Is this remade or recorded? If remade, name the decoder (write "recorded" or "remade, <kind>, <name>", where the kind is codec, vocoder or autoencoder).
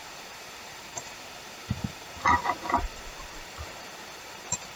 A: remade, vocoder, BigVGAN v2